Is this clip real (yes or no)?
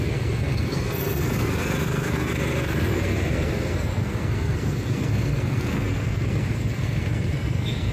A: no